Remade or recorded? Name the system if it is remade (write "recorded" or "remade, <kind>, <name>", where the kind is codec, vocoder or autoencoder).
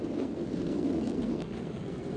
remade, codec, SNAC